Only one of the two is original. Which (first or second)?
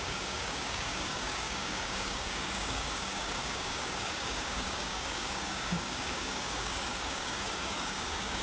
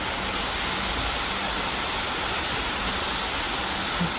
second